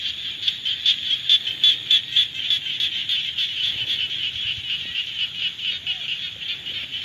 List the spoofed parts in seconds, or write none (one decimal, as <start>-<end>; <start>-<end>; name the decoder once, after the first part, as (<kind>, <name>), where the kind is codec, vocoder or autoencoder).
none